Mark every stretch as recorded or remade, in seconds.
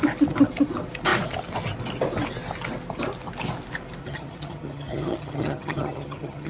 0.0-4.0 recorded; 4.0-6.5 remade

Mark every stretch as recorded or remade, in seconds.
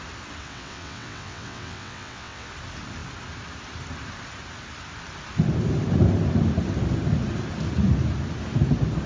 0.0-0.4 recorded; 0.4-2.5 remade; 2.5-9.1 recorded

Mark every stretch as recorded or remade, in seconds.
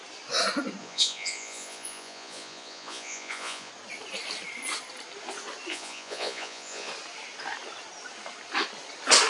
0.0-0.8 recorded; 0.8-3.7 remade; 3.7-5.7 recorded; 5.7-6.9 remade; 6.9-9.3 recorded